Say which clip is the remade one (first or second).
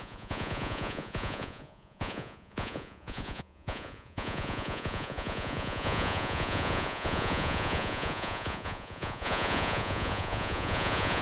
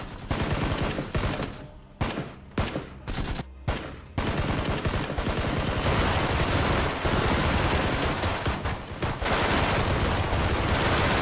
first